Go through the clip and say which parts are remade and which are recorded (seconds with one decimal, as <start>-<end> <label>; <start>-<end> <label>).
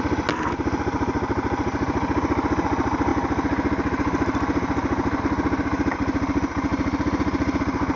0.0-6.7 recorded; 6.7-7.6 remade; 7.6-8.0 recorded